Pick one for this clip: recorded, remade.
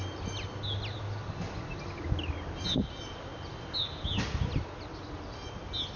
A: recorded